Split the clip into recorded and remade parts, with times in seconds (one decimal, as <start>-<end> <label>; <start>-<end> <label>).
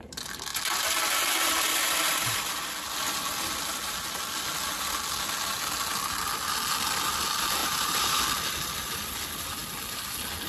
0.0-7.6 recorded; 7.6-8.2 remade; 8.2-10.5 recorded